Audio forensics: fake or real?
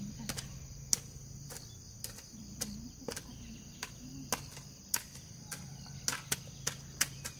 real